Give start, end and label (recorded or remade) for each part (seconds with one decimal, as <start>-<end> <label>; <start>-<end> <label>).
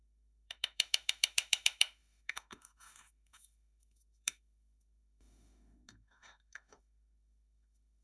0.0-8.0 remade